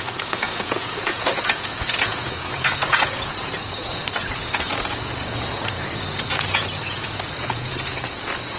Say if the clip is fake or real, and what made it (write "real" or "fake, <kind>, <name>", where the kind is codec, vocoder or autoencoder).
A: fake, vocoder, Vocos